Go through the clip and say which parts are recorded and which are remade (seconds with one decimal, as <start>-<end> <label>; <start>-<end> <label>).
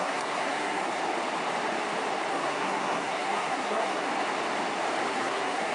0.0-1.0 remade; 1.0-2.3 recorded; 2.3-4.1 remade; 4.1-5.1 recorded; 5.1-5.7 remade